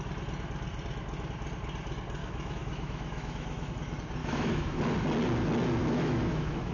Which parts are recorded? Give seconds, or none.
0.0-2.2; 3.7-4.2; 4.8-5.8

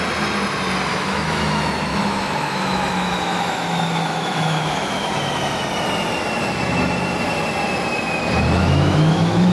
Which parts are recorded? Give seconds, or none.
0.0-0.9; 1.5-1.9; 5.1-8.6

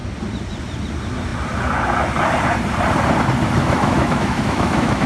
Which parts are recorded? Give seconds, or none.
0.0-3.6